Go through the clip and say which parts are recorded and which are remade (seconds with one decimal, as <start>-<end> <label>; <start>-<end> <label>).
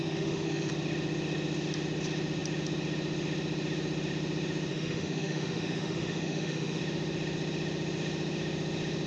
0.0-0.7 remade; 0.7-4.7 recorded; 4.7-6.8 remade; 6.8-9.1 recorded